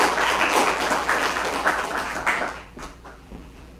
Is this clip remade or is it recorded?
remade